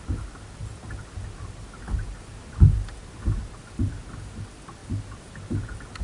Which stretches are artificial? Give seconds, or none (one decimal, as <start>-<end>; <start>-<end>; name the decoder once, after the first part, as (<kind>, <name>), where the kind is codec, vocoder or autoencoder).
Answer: none